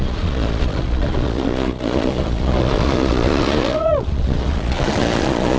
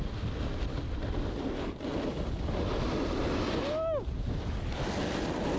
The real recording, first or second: second